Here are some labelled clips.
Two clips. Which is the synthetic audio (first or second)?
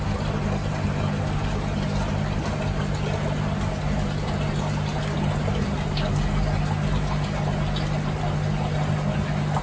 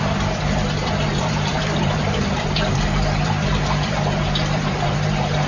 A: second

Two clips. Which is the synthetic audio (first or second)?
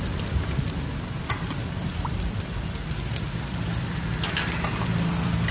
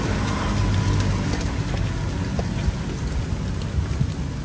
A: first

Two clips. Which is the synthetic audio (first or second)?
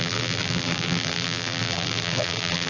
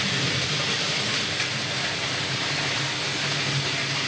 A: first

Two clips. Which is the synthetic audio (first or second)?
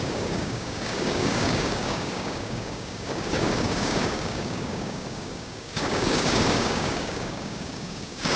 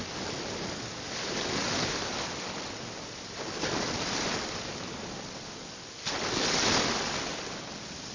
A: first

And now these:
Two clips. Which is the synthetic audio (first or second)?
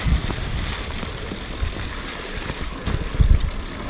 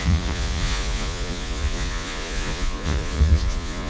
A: second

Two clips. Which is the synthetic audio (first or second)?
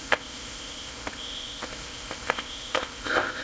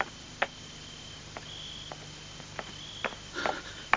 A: first